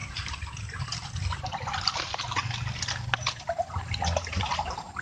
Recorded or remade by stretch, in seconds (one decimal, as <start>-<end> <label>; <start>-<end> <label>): 0.0-5.0 recorded